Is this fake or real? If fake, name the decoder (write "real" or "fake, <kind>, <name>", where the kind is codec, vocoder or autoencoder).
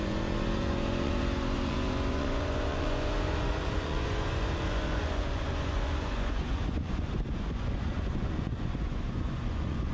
fake, vocoder, Vocos